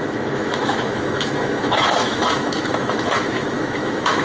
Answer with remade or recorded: remade